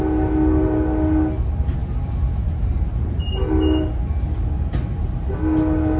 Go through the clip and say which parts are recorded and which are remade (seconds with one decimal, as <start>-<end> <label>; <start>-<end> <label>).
0.0-6.0 recorded

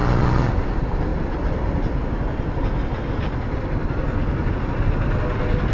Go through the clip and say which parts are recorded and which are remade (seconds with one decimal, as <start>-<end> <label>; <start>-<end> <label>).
0.0-0.5 remade; 0.5-5.7 recorded

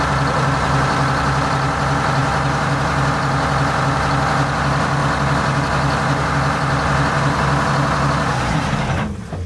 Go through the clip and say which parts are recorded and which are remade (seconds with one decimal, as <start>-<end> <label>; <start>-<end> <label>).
0.0-9.5 recorded

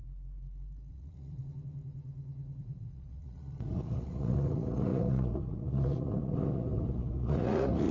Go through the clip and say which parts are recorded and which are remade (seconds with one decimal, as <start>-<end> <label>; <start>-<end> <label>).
0.0-0.9 recorded; 0.9-1.4 remade; 1.4-2.6 recorded; 2.6-7.9 remade

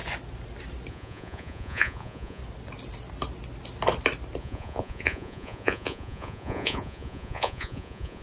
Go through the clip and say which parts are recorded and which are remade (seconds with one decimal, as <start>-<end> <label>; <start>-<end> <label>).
0.0-0.9 recorded; 0.9-2.4 remade; 2.4-4.4 recorded; 4.4-8.2 remade

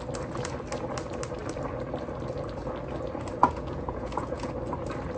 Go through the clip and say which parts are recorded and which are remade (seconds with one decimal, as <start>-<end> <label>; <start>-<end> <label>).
0.0-3.4 recorded; 3.4-4.5 remade; 4.5-5.2 recorded

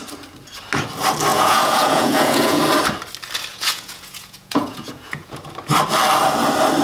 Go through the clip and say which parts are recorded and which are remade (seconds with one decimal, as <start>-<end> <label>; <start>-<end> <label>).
0.0-1.3 recorded; 1.3-2.6 remade; 2.6-3.5 recorded; 3.5-5.4 remade; 5.4-6.8 recorded

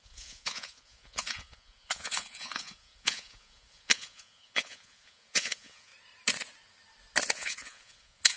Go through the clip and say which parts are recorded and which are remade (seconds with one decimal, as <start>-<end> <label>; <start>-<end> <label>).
0.0-5.9 remade; 5.9-7.3 recorded; 7.3-8.4 remade